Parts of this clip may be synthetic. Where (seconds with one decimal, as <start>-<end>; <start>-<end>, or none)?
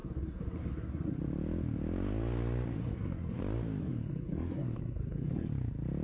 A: 0.0-1.2; 2.8-3.4; 3.8-5.5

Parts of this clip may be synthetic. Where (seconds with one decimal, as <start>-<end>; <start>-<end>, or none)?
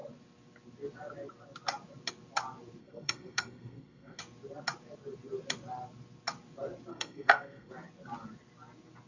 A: 2.8-4.2; 6.9-7.7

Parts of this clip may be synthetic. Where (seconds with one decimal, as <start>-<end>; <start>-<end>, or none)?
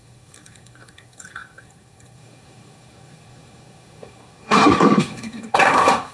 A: 0.0-6.1